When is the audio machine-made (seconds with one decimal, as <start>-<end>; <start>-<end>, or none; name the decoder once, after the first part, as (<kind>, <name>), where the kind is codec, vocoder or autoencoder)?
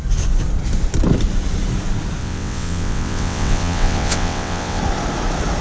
2.2-4.8 (vocoder, WaveNeXt)